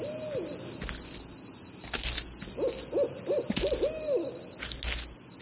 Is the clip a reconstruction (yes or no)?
no